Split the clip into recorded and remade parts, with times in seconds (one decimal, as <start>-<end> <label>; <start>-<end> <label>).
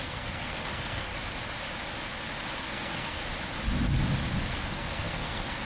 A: 0.0-1.1 remade; 1.1-2.6 recorded; 2.6-3.2 remade; 3.2-4.5 recorded; 4.5-5.6 remade